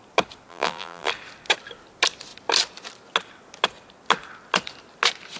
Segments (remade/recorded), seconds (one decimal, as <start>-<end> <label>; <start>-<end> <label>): 0.0-0.5 recorded; 0.5-1.1 remade; 1.1-5.4 recorded